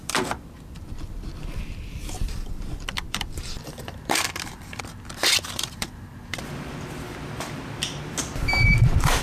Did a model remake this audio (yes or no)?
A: yes